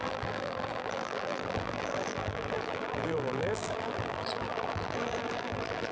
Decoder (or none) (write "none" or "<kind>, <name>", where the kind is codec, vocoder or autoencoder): vocoder, BigVGAN v2